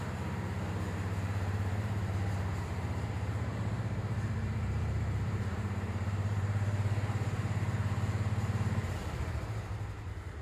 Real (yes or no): no